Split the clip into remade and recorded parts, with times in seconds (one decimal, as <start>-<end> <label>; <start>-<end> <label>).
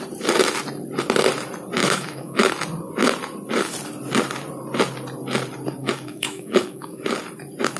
0.0-1.8 recorded; 1.8-2.5 remade; 2.5-5.8 recorded; 5.8-7.0 remade; 7.0-7.8 recorded